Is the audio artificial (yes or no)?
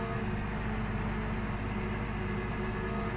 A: no